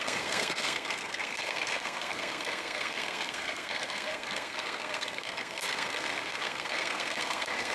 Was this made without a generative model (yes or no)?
no